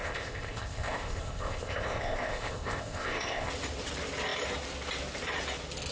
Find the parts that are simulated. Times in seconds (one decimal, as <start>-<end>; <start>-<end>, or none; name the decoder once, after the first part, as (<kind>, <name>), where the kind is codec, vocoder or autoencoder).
0.0-3.5 (codec, ZipCodec)